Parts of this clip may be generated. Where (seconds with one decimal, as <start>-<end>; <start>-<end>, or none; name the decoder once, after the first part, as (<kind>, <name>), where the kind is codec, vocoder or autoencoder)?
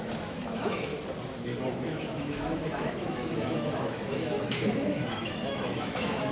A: 0.0-0.9 (autoencoder, DAC-VAE); 1.7-6.3